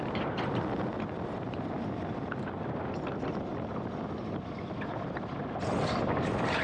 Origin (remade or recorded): recorded